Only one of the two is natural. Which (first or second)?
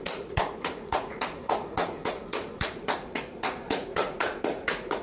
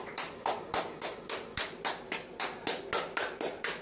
second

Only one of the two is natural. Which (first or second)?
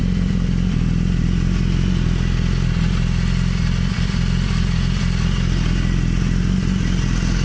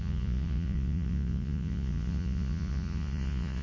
first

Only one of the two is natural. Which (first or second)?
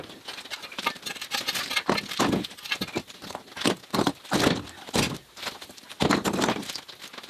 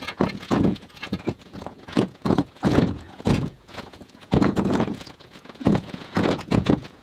first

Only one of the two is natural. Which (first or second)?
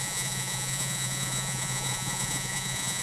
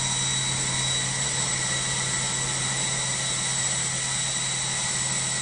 second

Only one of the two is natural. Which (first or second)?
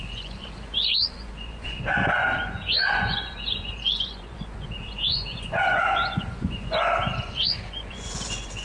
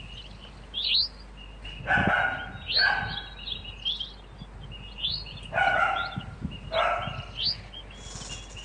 second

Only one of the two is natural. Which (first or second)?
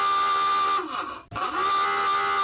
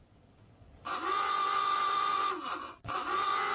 first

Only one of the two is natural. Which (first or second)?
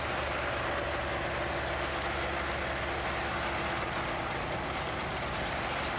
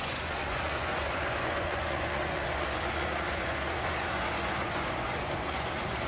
first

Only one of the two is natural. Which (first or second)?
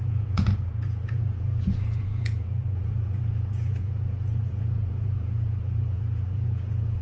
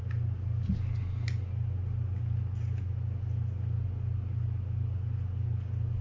second